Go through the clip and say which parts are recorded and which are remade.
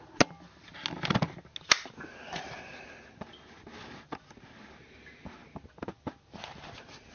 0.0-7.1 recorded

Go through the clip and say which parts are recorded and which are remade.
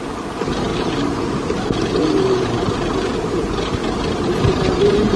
0.0-0.7 remade; 0.7-3.2 recorded; 3.2-3.8 remade; 3.8-4.8 recorded; 4.8-5.2 remade